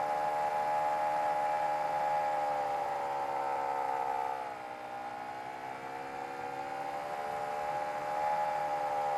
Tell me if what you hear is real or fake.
real